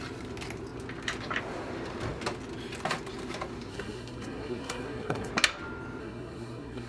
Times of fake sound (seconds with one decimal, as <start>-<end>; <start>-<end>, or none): 3.7-5.3; 6.0-6.9